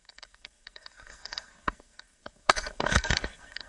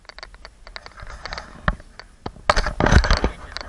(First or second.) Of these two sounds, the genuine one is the second